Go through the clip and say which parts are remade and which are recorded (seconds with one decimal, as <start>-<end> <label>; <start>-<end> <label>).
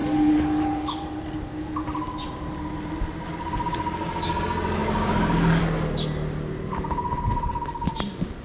0.0-8.4 recorded